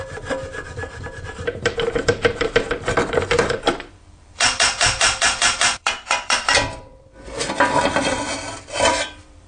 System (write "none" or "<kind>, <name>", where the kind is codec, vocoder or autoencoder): vocoder, BigVGAN v2